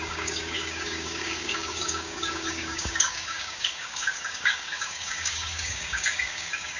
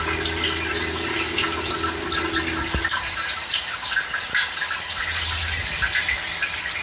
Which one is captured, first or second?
second